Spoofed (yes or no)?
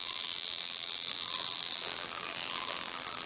yes